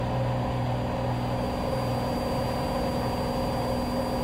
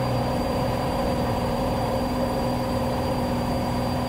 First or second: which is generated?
second